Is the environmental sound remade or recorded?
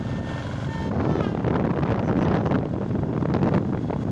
recorded